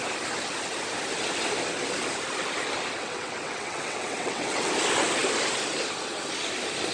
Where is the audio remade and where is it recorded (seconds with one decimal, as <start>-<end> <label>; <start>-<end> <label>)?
0.0-3.0 recorded; 3.0-4.7 remade; 4.7-6.9 recorded